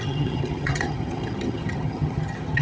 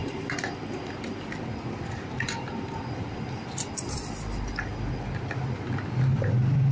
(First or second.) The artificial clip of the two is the first